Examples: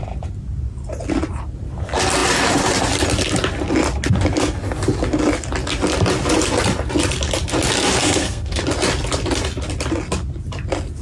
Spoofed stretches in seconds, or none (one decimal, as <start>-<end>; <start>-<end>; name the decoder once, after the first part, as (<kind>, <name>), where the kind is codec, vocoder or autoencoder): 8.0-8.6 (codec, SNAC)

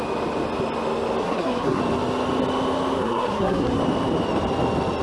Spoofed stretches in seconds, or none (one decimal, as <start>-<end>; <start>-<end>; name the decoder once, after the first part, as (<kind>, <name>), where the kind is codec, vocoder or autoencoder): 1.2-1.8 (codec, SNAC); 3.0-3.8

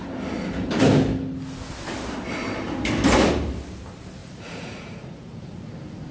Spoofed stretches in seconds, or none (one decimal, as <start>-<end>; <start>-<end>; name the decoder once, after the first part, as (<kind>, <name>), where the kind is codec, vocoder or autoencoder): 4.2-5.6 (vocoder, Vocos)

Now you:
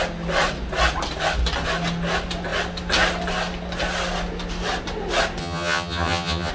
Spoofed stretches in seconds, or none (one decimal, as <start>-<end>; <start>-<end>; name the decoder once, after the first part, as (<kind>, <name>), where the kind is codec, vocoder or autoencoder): 5.4-6.5 (vocoder, HiFi-GAN)

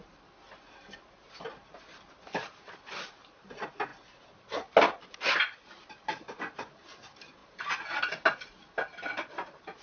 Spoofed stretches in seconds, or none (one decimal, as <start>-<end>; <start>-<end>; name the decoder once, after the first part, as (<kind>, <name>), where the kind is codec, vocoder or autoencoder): none